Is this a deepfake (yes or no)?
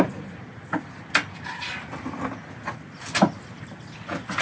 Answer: no